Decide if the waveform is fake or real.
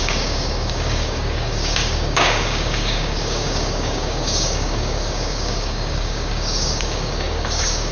fake